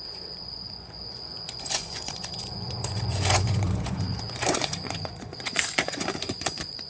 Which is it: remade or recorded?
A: remade